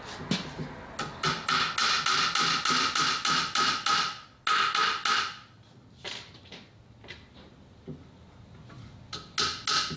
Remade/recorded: recorded